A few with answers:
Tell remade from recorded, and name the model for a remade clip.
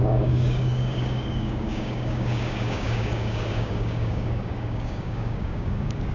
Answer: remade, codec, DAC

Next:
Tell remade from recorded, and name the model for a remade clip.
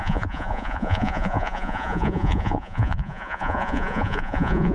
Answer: remade, vocoder, Vocos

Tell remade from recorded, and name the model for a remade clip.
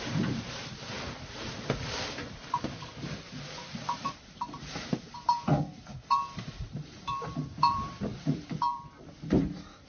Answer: remade, vocoder, BigVGAN v2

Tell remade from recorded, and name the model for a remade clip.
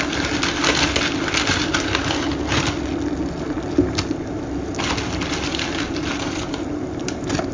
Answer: recorded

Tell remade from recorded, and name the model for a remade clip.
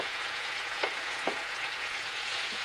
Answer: remade, vocoder, Vocos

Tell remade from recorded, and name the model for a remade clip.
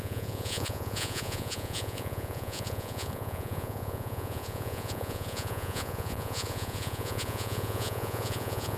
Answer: remade, vocoder, Vocos